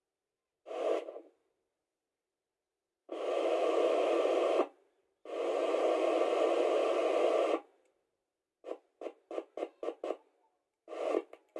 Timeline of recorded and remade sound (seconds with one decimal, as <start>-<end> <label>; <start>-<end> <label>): 0.0-3.0 recorded; 3.0-4.1 remade; 4.1-11.6 recorded